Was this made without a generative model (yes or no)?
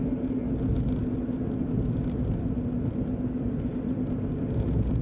yes